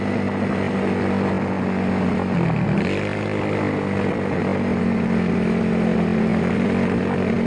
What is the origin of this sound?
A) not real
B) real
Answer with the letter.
B